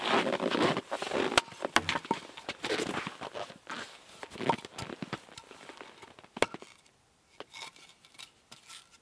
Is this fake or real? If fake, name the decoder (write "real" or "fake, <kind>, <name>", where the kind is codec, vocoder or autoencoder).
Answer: real